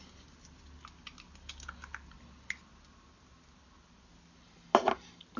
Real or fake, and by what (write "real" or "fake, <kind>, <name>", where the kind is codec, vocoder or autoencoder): real